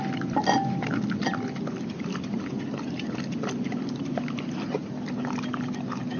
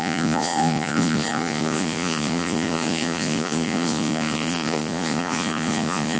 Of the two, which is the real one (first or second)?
first